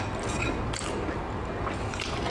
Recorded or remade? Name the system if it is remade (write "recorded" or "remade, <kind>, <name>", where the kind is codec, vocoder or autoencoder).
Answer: recorded